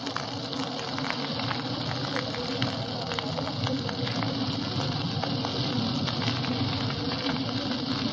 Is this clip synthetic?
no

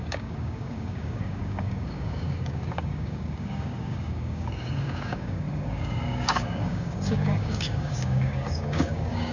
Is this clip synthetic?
yes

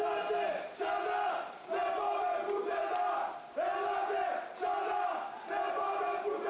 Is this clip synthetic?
no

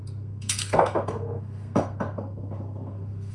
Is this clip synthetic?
yes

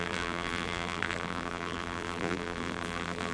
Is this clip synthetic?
yes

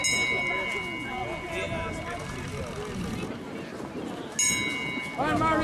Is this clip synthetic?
no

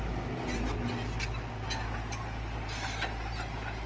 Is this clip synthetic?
no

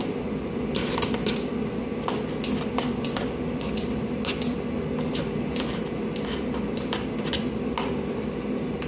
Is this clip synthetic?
no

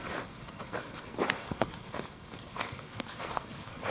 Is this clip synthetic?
yes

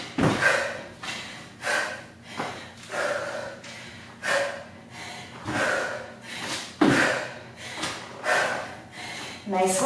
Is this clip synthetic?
no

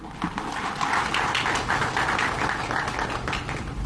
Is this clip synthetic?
no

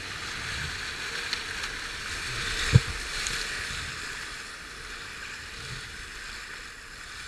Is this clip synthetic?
no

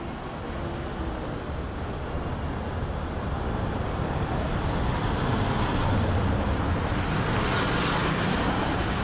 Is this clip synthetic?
no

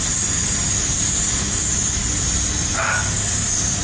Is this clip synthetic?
no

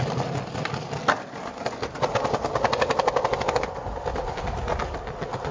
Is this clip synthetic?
no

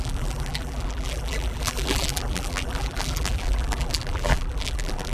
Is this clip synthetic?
yes